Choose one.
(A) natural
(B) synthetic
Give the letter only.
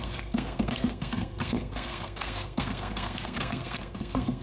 B